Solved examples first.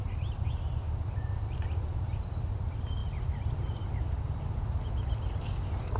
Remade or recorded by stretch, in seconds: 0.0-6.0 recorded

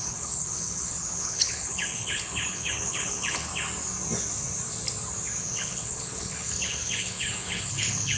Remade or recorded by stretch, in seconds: 0.0-3.5 remade; 3.5-5.4 recorded; 5.4-8.2 remade

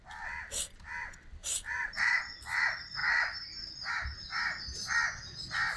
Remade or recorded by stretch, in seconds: 0.0-1.4 recorded; 1.4-2.2 remade; 2.2-5.8 recorded